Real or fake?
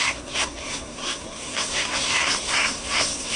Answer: fake